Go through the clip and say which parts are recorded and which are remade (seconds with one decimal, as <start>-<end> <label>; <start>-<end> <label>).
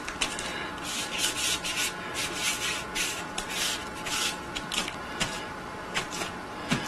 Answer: 0.0-6.9 recorded